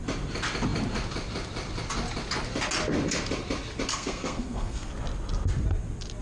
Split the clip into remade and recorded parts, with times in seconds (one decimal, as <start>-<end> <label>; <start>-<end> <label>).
0.0-3.9 recorded; 3.9-4.9 remade; 4.9-6.2 recorded